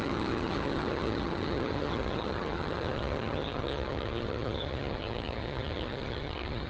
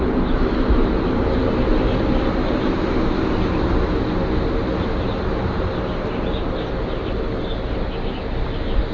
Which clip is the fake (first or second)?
first